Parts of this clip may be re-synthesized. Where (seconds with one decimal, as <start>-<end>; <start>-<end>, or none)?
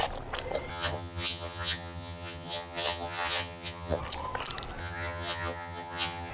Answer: 0.7-4.0; 4.8-6.3